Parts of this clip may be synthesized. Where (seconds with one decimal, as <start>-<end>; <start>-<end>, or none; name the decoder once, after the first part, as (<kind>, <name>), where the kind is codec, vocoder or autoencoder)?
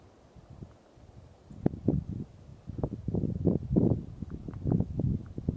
none